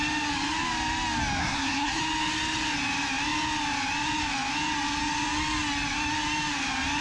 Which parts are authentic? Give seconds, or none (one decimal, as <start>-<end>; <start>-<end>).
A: 0.0-1.4; 2.0-7.0

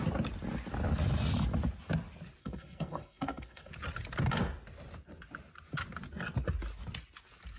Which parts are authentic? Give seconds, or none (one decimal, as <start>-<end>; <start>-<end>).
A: 0.0-2.4; 3.7-7.6

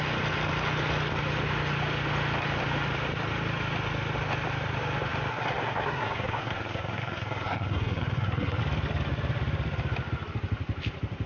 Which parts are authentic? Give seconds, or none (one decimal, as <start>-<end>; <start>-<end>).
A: 0.0-5.3; 8.6-11.3

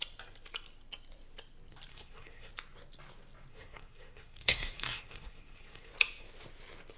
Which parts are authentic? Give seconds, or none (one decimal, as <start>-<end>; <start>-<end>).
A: 0.0-1.9; 2.5-3.5; 5.9-7.0

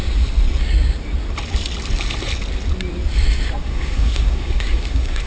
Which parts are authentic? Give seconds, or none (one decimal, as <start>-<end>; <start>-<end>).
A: 0.0-3.6

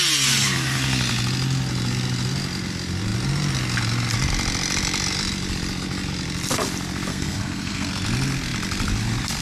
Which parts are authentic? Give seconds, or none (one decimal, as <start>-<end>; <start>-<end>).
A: 0.0-7.1; 7.9-9.4